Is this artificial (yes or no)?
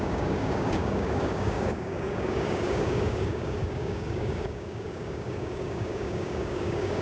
yes